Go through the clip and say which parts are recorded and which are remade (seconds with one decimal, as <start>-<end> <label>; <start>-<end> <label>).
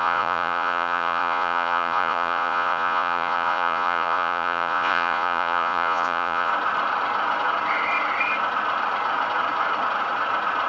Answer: 0.0-6.5 remade; 6.5-10.7 recorded